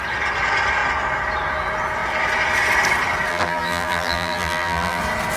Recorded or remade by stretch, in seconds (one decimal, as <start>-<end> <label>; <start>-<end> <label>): 0.0-3.3 recorded; 3.3-5.0 remade; 5.0-5.4 recorded